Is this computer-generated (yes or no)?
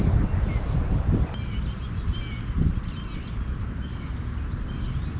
no